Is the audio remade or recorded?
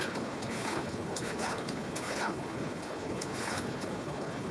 remade